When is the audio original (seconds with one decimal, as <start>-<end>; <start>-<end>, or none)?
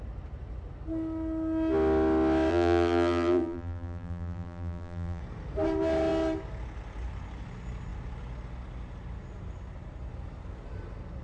0.0-2.5; 5.2-11.2